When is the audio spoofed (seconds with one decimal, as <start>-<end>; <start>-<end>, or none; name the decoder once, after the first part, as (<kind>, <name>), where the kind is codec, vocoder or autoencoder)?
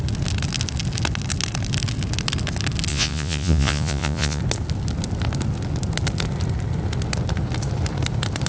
2.9-4.4 (vocoder, Vocos)